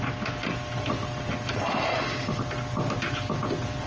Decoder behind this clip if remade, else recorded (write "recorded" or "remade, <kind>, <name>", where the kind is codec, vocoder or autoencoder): recorded